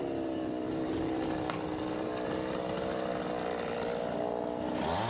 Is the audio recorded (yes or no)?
yes